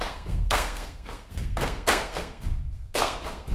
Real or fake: fake